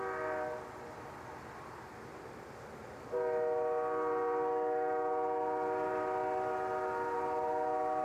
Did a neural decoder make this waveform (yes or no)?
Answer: no